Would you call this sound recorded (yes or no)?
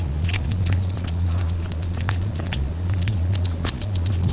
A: no